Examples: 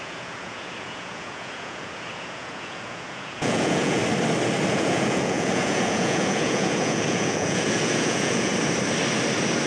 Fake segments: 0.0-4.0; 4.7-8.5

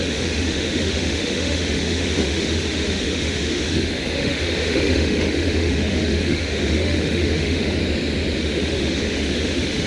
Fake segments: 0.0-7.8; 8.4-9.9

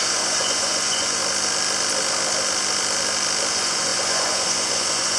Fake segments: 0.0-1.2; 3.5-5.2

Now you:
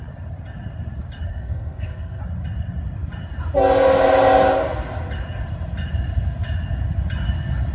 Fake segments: 1.3-2.2

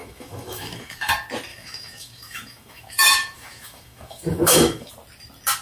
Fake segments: 0.0-1.1; 1.5-4.9

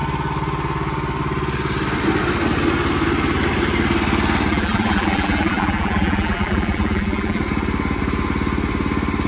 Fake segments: 4.5-7.4

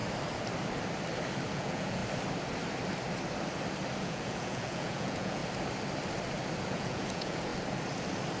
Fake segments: 1.5-2.0; 4.0-5.4; 6.6-7.5

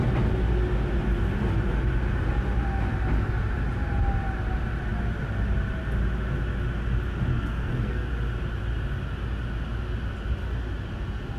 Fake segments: 7.3-8.1